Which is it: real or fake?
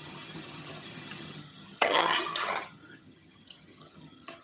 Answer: fake